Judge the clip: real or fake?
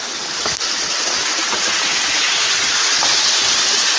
real